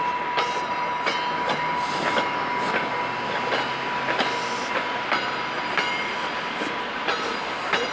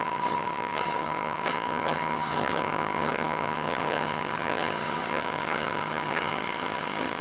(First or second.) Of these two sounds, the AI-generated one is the second